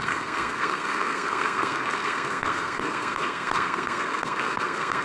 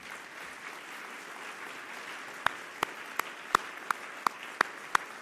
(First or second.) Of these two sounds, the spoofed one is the first